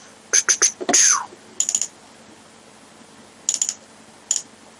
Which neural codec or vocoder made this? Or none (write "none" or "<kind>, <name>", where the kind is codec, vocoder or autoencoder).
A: none